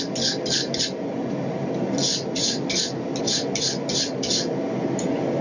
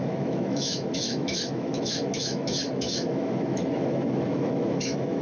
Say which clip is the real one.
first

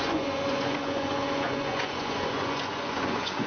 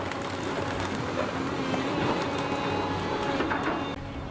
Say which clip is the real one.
second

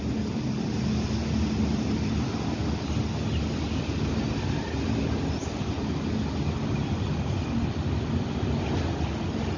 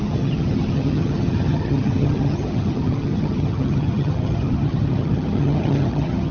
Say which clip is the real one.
first